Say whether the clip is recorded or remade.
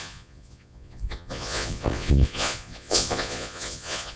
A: remade